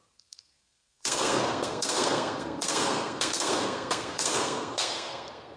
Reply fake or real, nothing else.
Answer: fake